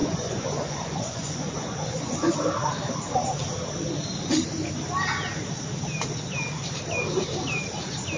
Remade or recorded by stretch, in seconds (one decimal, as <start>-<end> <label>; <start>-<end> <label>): 0.0-2.3 remade; 2.3-8.2 recorded